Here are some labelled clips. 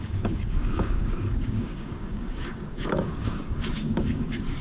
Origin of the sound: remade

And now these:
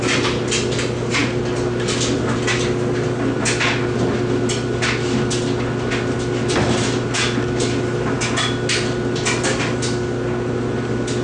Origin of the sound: recorded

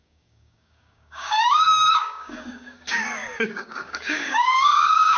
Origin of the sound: remade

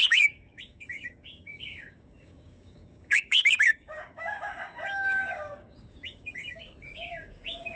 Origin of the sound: remade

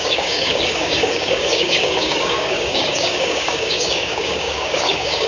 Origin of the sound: remade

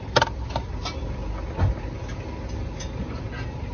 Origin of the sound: recorded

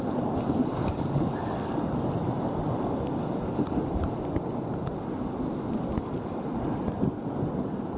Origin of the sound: recorded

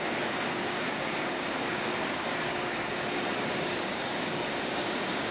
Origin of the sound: remade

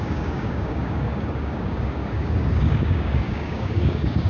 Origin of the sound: remade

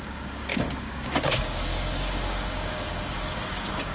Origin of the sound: remade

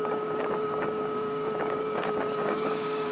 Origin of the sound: remade